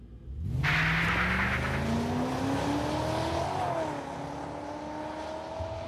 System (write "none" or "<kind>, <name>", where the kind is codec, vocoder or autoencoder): none